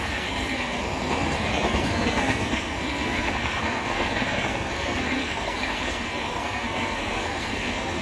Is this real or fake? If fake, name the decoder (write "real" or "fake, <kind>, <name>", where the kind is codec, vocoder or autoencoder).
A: fake, codec, SNAC